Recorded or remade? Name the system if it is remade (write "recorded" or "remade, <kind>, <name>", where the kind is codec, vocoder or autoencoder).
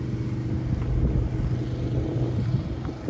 recorded